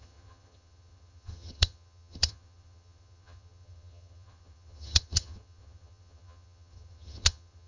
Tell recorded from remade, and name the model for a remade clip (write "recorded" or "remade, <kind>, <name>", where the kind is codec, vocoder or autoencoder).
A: remade, vocoder, HiFi-GAN